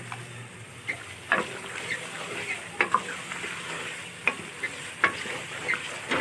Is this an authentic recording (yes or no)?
yes